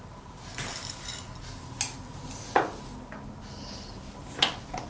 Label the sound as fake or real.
real